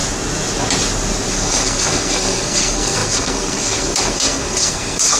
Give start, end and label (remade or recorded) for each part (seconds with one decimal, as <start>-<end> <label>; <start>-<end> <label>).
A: 0.0-1.3 recorded; 1.3-5.2 remade